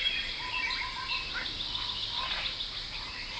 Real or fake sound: real